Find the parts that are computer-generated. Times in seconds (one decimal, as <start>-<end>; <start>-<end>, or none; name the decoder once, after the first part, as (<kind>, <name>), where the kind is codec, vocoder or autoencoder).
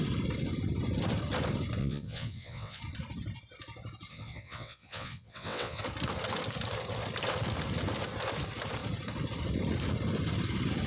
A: 1.8-2.8 (vocoder, WaveNeXt); 4.1-5.8